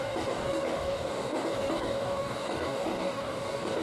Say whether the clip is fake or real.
fake